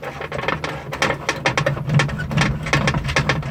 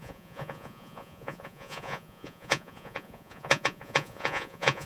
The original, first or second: first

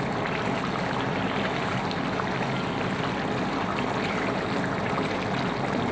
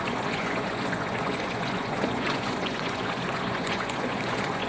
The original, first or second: first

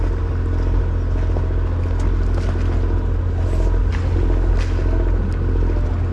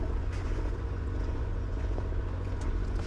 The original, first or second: first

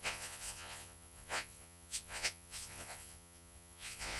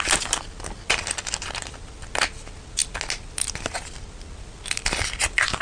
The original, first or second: second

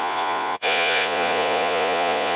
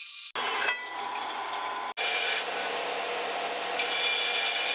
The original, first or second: second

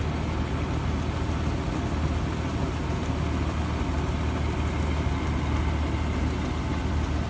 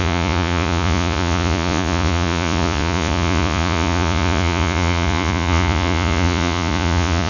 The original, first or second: first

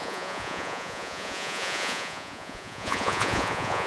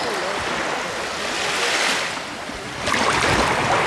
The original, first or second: second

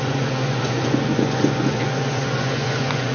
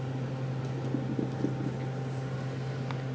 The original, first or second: second